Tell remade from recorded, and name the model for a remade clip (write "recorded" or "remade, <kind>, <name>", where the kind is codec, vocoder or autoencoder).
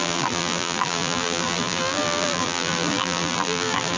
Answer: remade, vocoder, BigVGAN v2